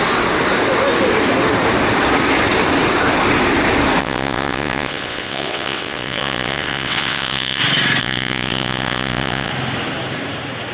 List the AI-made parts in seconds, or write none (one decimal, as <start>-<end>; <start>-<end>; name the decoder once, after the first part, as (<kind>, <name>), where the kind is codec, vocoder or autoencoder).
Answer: 4.0-7.6 (vocoder, WaveNeXt); 8.0-9.5